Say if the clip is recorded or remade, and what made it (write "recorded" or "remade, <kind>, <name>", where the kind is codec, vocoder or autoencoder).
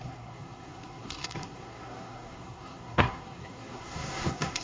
remade, codec, SNAC